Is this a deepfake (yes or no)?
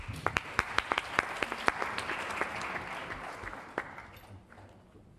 no